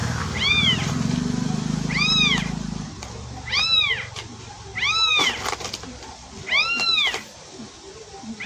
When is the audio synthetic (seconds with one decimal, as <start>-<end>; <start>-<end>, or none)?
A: 0.0-0.9